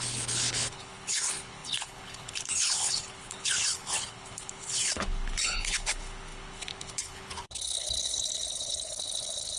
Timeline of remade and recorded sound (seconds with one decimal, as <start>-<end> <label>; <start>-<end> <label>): 0.0-9.6 remade